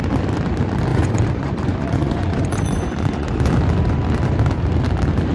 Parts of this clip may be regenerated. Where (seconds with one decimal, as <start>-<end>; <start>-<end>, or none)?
0.9-3.5